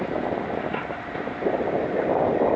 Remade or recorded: recorded